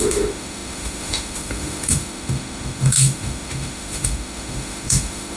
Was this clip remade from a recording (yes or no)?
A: yes